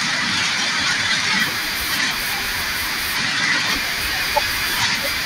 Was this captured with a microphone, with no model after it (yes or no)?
no